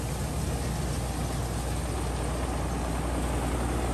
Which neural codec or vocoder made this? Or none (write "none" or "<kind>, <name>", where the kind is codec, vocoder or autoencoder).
none